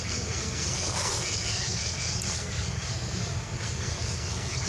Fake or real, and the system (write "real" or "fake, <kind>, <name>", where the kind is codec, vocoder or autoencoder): fake, codec, SNAC